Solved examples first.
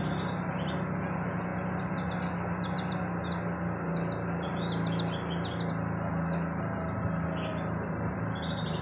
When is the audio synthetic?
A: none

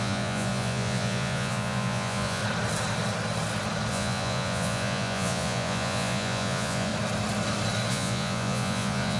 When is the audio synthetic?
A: 0.0-2.4 (vocoder, Vocos); 3.9-6.9; 7.9-9.2

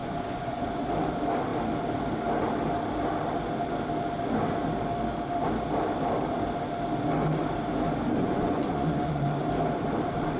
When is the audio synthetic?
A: 0.0-0.8 (vocoder, Vocos); 8.2-9.2

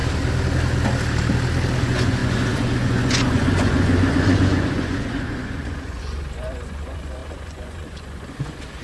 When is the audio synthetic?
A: 1.8-8.8 (vocoder, Vocos)

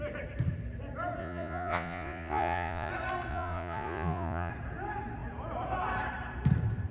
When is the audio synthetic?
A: 1.2-2.9 (vocoder, Vocos); 3.3-4.5

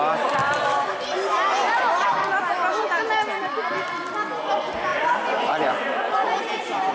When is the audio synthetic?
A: 4.9-6.4 (vocoder, Vocos)

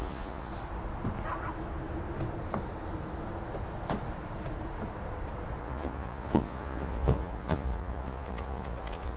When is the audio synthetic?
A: 0.0-0.5 (vocoder, Vocos); 5.6-9.2

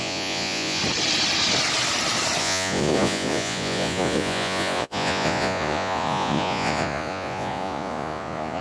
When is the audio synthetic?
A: 0.0-0.8 (vocoder, Vocos); 2.4-8.6